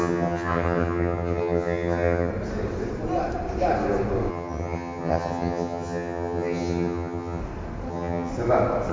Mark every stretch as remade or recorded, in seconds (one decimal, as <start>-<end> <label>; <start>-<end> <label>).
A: 0.0-2.3 remade; 2.3-4.3 recorded; 4.3-7.4 remade; 7.4-7.9 recorded; 7.9-8.3 remade; 8.3-8.9 recorded

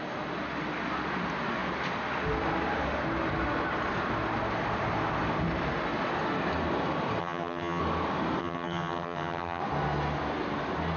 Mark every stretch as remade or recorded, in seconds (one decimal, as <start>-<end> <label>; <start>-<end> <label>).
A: 0.0-7.2 recorded; 7.2-7.8 remade; 7.8-8.4 recorded; 8.4-9.6 remade; 9.6-11.0 recorded

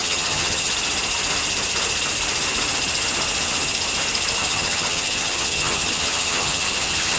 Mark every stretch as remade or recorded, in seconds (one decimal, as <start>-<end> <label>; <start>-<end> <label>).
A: 0.0-0.7 remade; 0.7-4.4 recorded; 4.4-7.2 remade

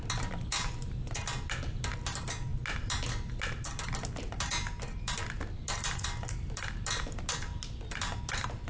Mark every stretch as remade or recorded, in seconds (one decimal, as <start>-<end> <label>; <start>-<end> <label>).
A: 0.0-8.7 recorded

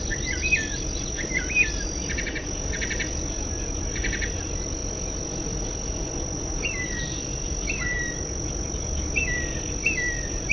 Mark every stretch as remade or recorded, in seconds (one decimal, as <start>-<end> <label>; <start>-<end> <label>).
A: 0.0-10.5 recorded

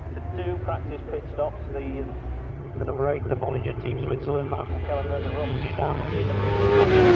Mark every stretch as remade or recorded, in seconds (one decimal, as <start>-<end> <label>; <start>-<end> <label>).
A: 0.0-2.5 recorded; 2.5-4.7 remade; 4.7-5.5 recorded; 5.5-6.1 remade; 6.1-7.2 recorded

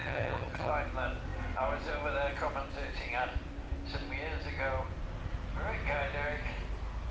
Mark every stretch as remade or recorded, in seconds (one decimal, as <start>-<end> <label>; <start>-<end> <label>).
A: 0.0-0.7 remade; 0.7-7.1 recorded

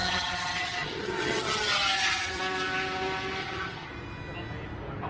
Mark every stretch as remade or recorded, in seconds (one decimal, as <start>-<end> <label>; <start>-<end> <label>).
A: 0.0-2.4 remade; 2.4-3.4 recorded; 3.4-3.9 remade; 3.9-5.1 recorded